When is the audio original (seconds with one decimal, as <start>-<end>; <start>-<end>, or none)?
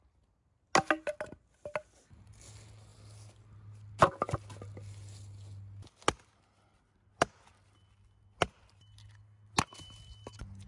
0.0-10.7